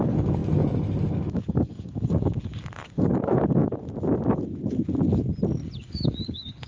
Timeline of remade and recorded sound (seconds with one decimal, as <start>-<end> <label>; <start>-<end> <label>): 0.0-3.6 remade; 3.6-5.8 recorded; 5.8-6.7 remade